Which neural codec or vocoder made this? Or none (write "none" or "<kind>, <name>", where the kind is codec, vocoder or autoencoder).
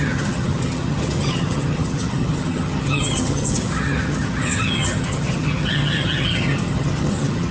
vocoder, HiFi-GAN